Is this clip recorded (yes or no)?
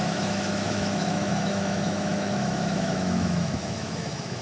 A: no